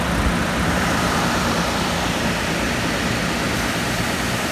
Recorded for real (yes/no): no